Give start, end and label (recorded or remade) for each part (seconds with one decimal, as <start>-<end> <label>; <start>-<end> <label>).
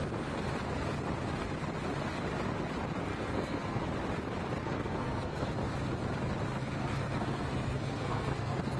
0.0-3.1 recorded; 3.1-3.8 remade; 3.8-4.6 recorded; 4.6-5.5 remade; 5.5-6.6 recorded; 6.6-8.8 remade